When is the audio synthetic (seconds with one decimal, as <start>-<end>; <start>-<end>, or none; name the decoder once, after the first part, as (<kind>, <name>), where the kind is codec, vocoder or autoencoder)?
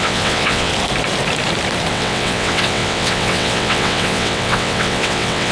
0.0-0.7 (vocoder, WaveNeXt); 1.9-5.5